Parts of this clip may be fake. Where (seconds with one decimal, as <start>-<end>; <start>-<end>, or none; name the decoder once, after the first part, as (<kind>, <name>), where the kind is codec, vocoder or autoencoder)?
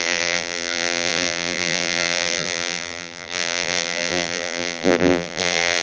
0.0-5.8 (vocoder, BigVGAN v2)